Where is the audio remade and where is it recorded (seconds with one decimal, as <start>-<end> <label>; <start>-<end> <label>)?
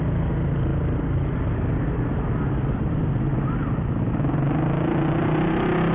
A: 0.0-5.9 recorded